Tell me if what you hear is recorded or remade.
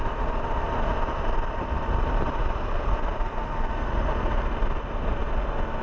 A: recorded